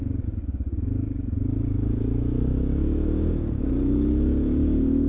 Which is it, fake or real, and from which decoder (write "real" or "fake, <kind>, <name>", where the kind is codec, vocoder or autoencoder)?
fake, codec, DAC